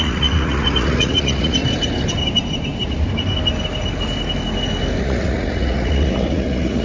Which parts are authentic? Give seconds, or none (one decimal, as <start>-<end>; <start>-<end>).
1.6-5.0